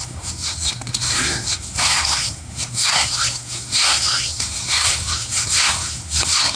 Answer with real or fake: fake